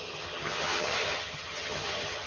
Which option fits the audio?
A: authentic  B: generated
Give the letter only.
B